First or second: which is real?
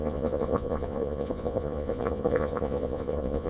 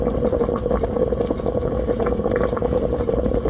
second